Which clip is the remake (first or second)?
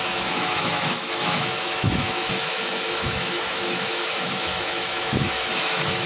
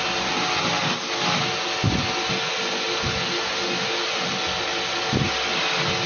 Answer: first